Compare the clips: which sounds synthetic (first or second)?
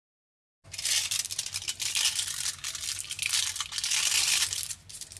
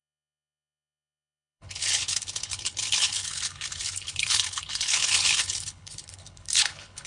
second